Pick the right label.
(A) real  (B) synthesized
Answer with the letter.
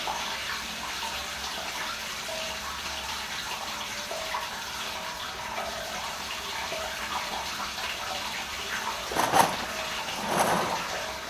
B